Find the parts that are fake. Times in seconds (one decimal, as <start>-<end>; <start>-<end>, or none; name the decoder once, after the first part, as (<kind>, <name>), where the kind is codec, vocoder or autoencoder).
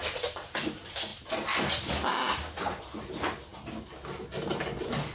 none